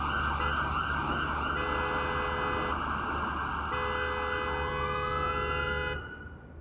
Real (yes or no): yes